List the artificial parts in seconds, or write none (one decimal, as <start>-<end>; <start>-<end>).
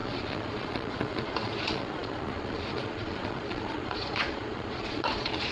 0.0-5.5